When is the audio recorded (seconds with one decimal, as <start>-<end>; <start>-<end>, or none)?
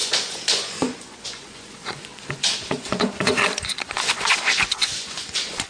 none